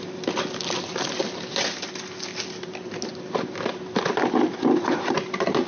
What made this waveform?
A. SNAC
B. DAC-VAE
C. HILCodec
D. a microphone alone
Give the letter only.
D